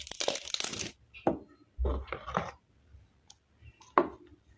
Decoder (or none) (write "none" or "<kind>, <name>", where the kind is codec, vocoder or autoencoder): none